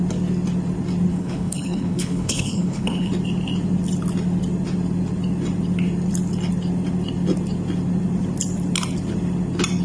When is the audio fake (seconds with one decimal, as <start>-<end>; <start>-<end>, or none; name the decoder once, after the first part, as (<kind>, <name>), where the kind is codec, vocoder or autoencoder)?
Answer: 1.1-3.1 (codec, HILCodec)